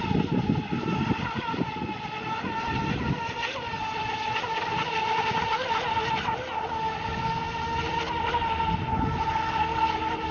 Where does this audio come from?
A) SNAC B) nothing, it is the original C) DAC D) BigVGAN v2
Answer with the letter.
B